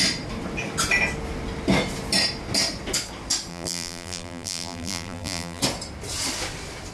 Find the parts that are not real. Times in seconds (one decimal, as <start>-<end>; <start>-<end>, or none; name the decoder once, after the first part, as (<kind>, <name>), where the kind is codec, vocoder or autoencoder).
3.5-5.6 (vocoder, BigVGAN v2)